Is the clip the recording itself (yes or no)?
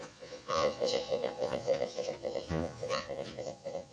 no